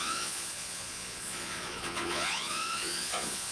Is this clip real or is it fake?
fake